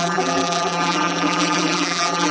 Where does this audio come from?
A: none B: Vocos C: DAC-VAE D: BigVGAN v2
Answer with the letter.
D